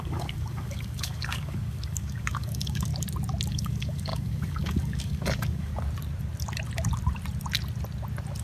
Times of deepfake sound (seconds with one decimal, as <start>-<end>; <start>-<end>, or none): 0.0-2.9; 3.5-5.7